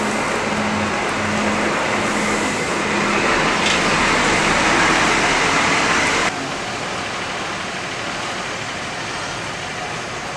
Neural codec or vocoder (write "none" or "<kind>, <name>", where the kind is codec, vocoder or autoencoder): none